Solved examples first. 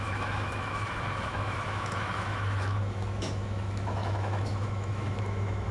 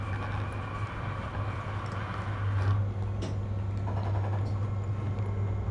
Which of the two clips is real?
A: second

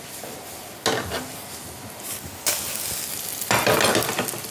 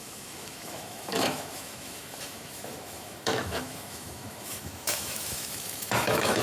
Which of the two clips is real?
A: first